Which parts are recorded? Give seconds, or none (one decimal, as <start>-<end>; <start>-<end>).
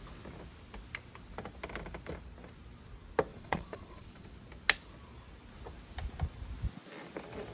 0.0-3.3; 4.3-7.5